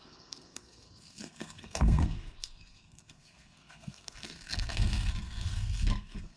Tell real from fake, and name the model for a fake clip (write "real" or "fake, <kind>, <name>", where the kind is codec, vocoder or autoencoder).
fake, codec, SNAC